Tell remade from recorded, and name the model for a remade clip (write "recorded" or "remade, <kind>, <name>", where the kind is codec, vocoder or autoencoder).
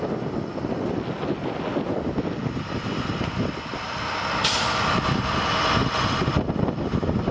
recorded